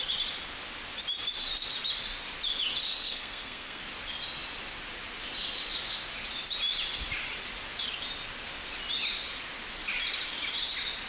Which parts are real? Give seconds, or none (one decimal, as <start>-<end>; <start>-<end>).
0.0-2.9; 3.8-11.1